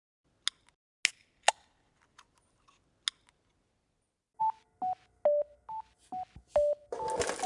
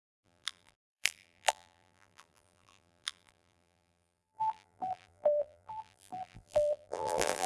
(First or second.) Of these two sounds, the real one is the first